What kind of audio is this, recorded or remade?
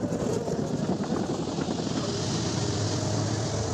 recorded